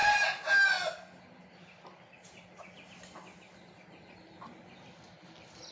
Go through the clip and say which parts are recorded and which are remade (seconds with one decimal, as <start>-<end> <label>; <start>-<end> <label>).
0.0-5.7 recorded

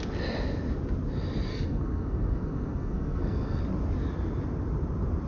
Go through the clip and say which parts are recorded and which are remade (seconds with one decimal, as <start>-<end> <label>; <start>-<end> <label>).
0.0-1.5 recorded; 1.5-3.6 remade; 3.6-5.3 recorded

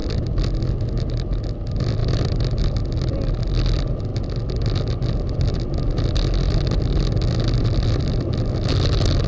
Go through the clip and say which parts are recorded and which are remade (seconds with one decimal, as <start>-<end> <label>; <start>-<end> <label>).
0.0-2.0 recorded; 2.0-2.6 remade; 2.6-9.3 recorded

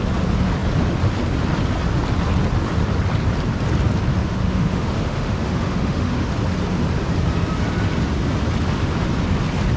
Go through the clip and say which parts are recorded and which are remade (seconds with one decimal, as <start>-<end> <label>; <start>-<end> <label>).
0.0-4.1 recorded; 4.1-6.3 remade; 6.3-9.8 recorded

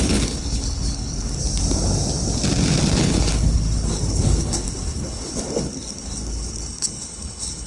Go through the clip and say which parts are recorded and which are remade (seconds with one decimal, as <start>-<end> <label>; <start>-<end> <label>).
0.0-1.4 remade; 1.4-3.0 recorded; 3.0-7.7 remade

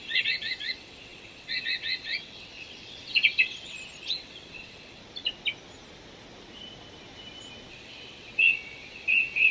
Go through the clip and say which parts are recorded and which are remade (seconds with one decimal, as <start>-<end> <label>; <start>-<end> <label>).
0.0-5.0 remade; 5.0-7.7 recorded; 7.7-9.5 remade

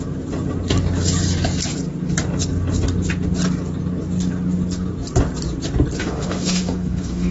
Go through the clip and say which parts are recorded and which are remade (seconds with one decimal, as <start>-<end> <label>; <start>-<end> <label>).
0.0-6.0 recorded; 6.0-7.3 remade

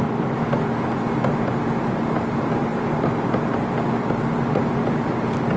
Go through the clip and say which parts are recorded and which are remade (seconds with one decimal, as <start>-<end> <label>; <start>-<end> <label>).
0.0-5.6 recorded